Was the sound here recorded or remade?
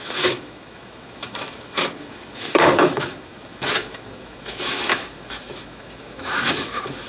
remade